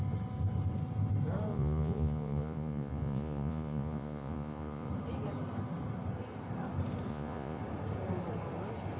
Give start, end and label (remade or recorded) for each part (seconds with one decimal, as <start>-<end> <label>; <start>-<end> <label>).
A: 0.0-1.5 recorded; 1.5-4.9 remade; 4.9-7.1 recorded; 7.1-7.6 remade; 7.6-9.0 recorded